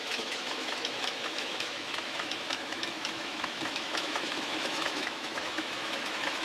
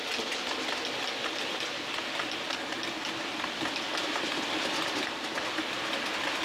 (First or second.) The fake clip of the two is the first